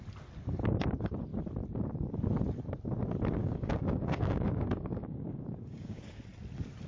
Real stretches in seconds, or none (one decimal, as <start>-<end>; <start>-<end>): 0.0-3.4; 6.2-6.9